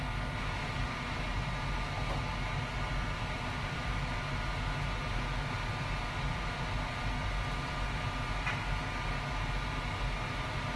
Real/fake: real